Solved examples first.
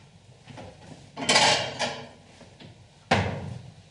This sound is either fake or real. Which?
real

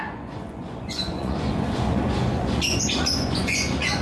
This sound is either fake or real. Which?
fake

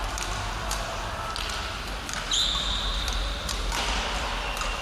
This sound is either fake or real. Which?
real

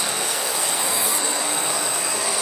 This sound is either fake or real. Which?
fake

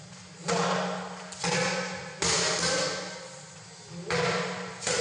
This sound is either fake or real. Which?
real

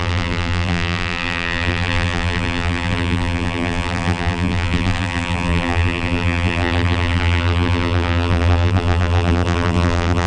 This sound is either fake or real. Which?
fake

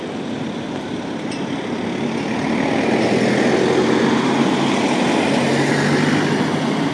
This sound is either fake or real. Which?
real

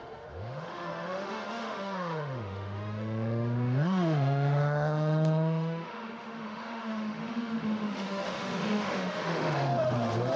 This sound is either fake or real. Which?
fake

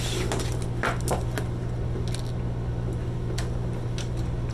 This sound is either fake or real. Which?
real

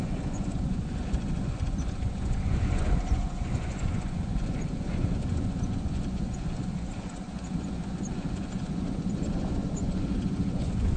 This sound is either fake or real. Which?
fake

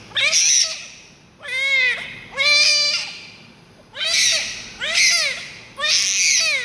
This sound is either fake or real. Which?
real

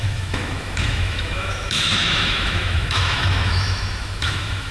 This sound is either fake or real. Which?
fake